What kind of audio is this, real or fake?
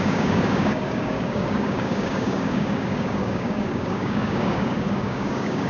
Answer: fake